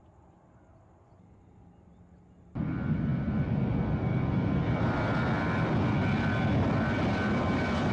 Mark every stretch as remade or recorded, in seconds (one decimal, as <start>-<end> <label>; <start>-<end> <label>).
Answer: 0.0-7.9 recorded